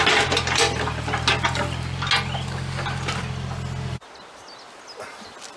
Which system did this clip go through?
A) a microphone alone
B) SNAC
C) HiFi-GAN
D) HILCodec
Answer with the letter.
A